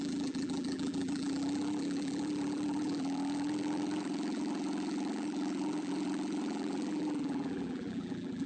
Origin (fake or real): fake